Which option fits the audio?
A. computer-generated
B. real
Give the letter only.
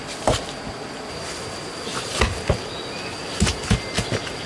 B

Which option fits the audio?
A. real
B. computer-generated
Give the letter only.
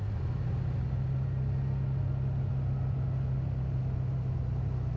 A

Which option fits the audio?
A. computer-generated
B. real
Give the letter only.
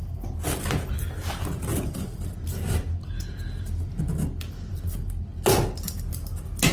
B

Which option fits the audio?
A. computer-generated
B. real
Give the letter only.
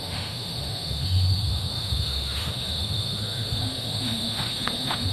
A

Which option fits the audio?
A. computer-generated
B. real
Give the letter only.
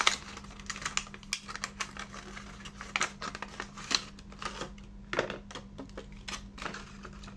B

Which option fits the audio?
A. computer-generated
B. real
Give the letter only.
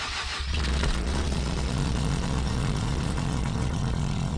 A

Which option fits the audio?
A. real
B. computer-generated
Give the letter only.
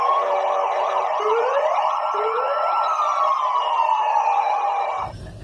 B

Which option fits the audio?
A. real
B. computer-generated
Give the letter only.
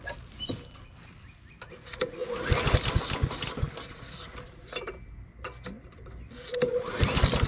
A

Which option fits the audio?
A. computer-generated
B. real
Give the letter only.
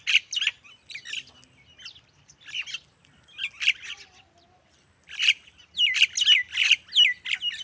B